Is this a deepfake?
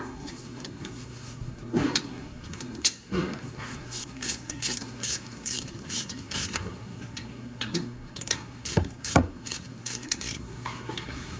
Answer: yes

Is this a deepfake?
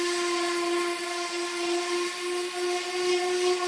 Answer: no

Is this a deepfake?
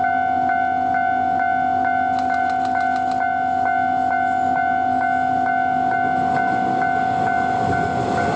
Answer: no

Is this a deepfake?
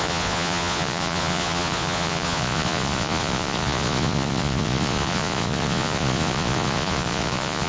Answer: yes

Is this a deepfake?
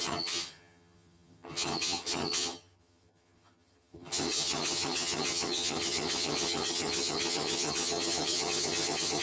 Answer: yes